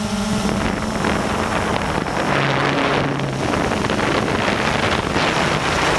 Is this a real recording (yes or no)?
yes